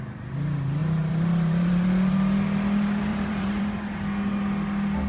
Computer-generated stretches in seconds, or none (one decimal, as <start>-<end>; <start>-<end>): 0.8-2.1; 3.1-3.6